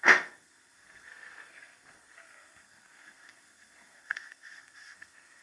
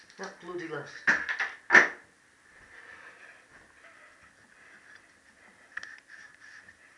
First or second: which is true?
second